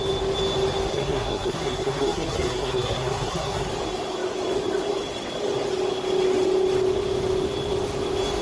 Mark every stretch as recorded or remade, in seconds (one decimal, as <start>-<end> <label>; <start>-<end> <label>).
0.0-0.9 recorded; 0.9-3.7 remade; 3.7-8.4 recorded